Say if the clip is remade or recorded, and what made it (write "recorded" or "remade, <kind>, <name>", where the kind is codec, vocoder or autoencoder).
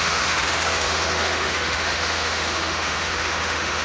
remade, autoencoder, DAC-VAE